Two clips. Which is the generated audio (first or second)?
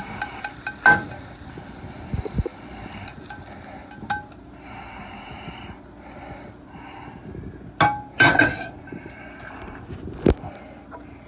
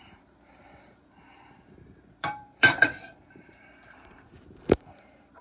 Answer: second